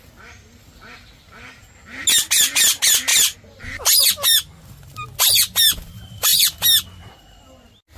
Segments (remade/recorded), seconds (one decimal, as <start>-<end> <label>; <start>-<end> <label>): 0.0-8.0 recorded